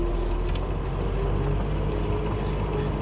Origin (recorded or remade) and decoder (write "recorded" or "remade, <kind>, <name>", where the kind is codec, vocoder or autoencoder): recorded